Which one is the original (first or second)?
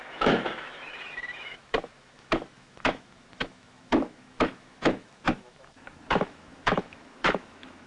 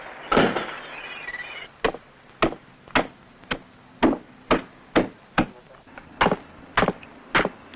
second